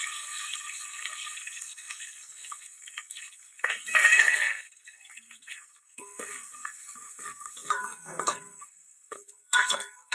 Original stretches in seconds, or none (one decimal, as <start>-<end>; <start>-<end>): none